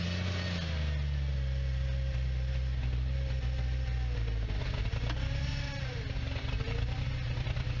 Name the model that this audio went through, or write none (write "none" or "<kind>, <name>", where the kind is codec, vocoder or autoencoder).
none